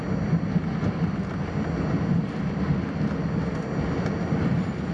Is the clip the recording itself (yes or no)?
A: yes